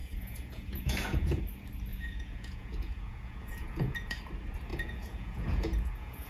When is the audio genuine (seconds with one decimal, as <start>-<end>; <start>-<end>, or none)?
1.4-1.9; 4.2-4.7

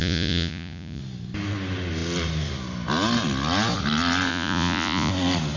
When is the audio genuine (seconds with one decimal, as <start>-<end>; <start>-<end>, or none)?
1.0-4.3; 5.1-5.6

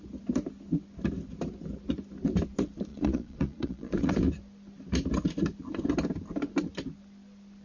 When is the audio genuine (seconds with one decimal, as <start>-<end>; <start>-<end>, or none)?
0.0-2.9; 4.1-7.6

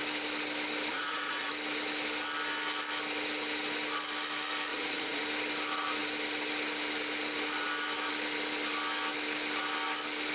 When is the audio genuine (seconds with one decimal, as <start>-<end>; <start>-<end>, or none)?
0.0-0.9; 1.5-4.7; 5.2-10.3

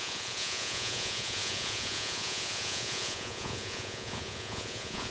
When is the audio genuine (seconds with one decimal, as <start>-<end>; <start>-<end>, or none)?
none

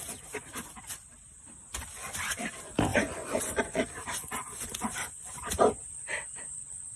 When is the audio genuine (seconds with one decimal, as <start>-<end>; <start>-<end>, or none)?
0.0-2.9; 3.8-7.0